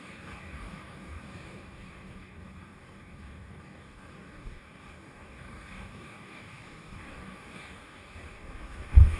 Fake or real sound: fake